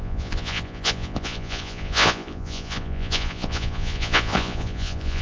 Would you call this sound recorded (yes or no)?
no